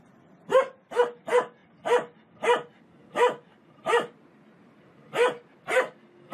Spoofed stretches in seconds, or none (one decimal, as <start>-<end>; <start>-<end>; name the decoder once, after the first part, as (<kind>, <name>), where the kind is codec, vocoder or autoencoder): 3.5-4.9 (vocoder, BigVGAN v2)